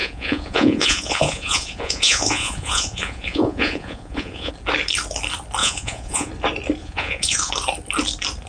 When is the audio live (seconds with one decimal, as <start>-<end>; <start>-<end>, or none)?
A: 4.5-5.6; 6.3-6.8; 7.5-8.5